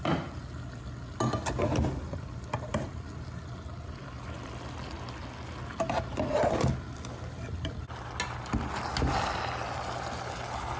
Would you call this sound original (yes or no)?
yes